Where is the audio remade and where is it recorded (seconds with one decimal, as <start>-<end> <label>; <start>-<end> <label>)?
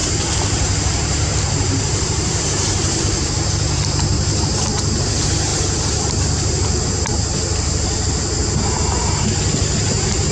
0.0-3.0 remade; 3.0-4.1 recorded; 4.1-4.6 remade; 4.6-5.5 recorded; 5.5-6.2 remade; 6.2-10.3 recorded